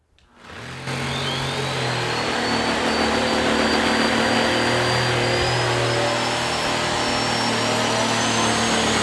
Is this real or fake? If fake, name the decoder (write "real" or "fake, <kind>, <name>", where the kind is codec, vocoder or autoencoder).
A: real